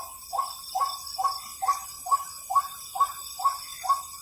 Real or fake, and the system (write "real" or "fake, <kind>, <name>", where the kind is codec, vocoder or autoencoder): real